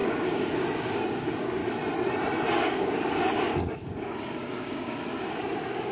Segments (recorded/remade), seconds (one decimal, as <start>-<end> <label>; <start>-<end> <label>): 0.0-1.6 remade; 1.6-2.5 recorded; 2.5-5.9 remade